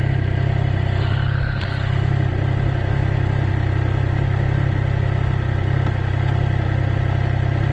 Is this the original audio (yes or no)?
yes